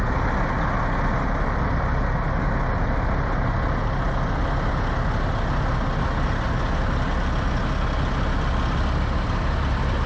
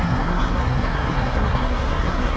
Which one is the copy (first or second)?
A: second